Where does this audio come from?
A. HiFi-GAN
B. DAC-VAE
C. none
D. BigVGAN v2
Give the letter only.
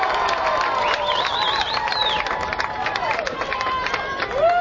D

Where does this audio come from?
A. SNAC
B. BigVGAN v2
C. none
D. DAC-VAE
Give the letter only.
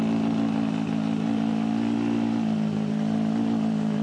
B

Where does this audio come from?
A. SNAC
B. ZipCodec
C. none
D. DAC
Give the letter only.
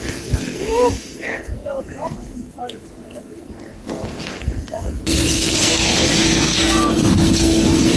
A